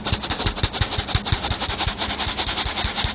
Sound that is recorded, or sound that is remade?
recorded